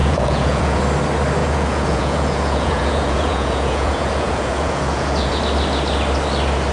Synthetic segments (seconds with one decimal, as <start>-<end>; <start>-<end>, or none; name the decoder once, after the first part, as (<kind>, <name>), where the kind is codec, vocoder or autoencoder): 0.0-0.8 (vocoder, Vocos); 1.4-5.4